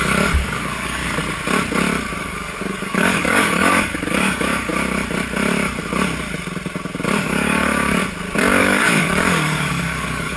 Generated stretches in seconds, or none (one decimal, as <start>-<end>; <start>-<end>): 0.0-1.0; 2.2-4.7; 7.2-8.0; 8.6-10.4